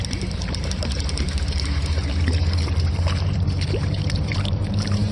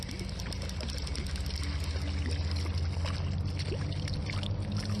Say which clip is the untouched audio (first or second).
second